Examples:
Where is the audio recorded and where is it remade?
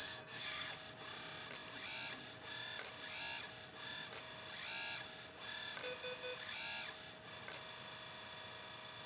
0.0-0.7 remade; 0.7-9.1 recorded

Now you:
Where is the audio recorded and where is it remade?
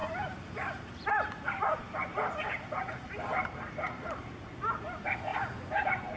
0.0-6.2 remade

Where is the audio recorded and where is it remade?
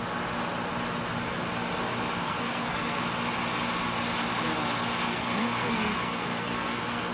0.0-2.2 recorded; 2.2-3.0 remade; 3.0-5.1 recorded; 5.1-7.1 remade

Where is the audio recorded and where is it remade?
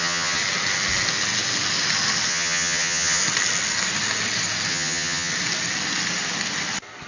0.0-0.4 remade; 0.4-2.3 recorded; 2.3-3.2 remade; 3.2-4.7 recorded; 4.7-5.3 remade; 5.3-7.1 recorded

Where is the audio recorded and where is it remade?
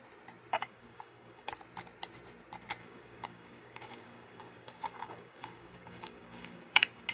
0.0-0.5 recorded; 0.5-1.5 remade; 1.5-2.8 recorded; 2.8-7.1 remade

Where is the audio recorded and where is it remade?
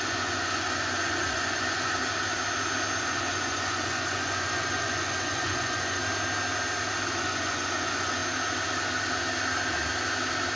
0.0-2.0 remade; 2.0-3.0 recorded; 3.0-6.0 remade; 6.0-7.1 recorded; 7.1-8.2 remade; 8.2-10.6 recorded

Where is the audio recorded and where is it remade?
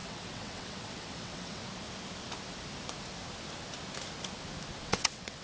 0.0-1.6 remade; 1.6-4.8 recorded; 4.8-5.4 remade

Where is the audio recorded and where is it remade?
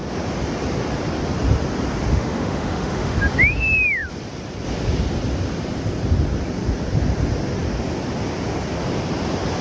0.0-2.1 recorded; 2.1-3.1 remade; 3.1-9.6 recorded